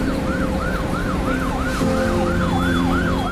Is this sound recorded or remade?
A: remade